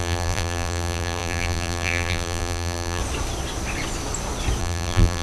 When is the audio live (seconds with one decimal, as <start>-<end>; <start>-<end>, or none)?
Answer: 3.0-4.6

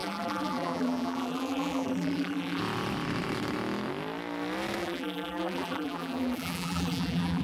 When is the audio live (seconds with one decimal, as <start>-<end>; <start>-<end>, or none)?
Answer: 2.6-4.8

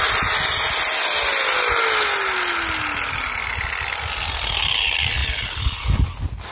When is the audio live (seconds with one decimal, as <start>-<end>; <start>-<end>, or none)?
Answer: 0.0-6.5

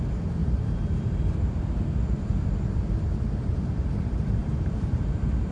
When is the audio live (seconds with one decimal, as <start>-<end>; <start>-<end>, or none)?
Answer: none

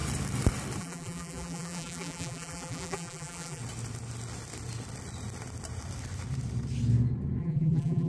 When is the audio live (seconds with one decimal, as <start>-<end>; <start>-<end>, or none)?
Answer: 0.0-0.8; 3.6-7.4